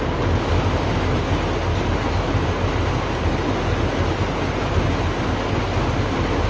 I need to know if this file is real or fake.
real